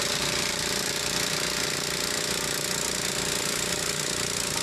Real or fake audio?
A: real